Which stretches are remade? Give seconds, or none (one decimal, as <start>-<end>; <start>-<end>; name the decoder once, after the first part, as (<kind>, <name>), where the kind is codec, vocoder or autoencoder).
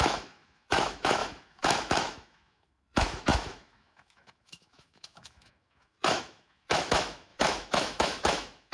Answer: 0.0-8.7 (autoencoder, DAC-VAE)